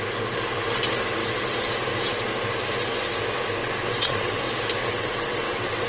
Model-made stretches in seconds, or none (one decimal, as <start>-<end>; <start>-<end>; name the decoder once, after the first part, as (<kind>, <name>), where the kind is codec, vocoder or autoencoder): 3.6-4.4 (vocoder, WaveNeXt); 4.9-5.9